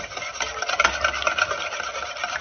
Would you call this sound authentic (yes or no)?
yes